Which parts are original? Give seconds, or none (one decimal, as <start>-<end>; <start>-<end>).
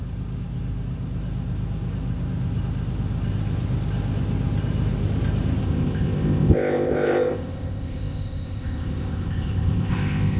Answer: 0.0-5.6